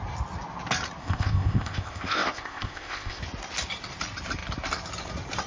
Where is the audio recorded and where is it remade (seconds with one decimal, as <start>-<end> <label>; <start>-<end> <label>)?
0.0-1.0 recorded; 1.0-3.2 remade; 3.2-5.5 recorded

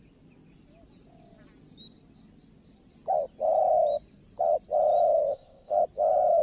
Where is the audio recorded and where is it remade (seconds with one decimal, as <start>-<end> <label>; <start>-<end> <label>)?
0.0-5.3 recorded; 5.3-5.8 remade; 5.8-6.4 recorded

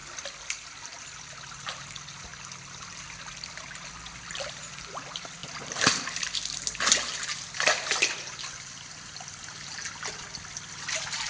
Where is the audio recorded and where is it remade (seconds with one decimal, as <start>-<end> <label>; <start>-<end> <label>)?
0.0-11.3 recorded